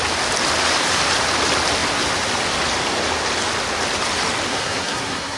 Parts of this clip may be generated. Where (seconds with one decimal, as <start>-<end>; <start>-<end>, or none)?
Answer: 4.5-5.4